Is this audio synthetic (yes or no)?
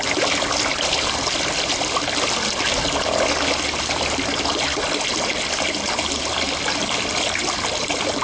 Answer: no